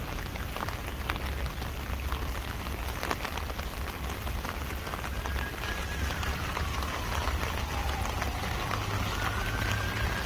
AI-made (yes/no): no